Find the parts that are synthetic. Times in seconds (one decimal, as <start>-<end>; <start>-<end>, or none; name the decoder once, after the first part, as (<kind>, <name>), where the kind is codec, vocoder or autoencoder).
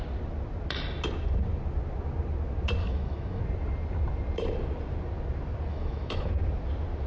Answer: 2.8-3.4 (autoencoder, DAC-VAE); 5.7-6.3